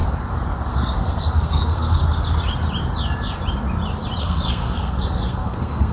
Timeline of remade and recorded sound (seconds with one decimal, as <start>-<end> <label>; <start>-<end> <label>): 0.0-0.7 recorded; 0.7-2.0 remade; 2.0-4.2 recorded; 4.2-5.9 remade